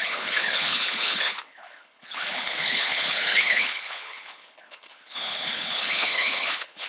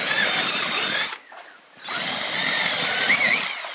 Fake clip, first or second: first